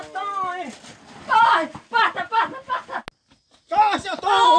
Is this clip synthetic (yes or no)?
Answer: no